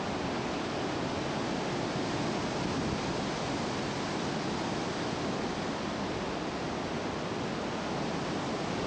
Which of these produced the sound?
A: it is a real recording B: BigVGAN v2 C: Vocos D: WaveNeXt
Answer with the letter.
A